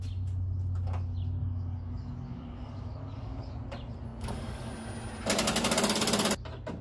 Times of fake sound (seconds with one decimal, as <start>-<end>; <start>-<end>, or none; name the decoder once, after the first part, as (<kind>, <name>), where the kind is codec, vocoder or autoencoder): 1.4-3.5 (codec, DAC); 4.1-4.7